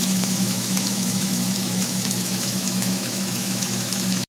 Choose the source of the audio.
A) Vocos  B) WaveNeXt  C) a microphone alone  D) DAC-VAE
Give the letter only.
D